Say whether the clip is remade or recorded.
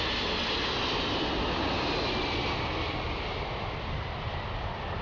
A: recorded